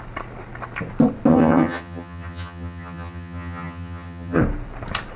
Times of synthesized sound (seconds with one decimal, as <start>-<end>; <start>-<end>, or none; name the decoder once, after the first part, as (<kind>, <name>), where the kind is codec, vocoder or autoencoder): 1.3-4.4 (vocoder, HiFi-GAN)